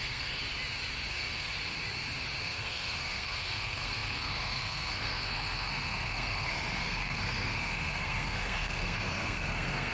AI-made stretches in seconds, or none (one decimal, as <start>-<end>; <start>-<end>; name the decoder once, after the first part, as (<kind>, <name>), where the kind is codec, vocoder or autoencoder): 0.0-0.4 (codec, SNAC); 1.1-1.5; 2.4-9.9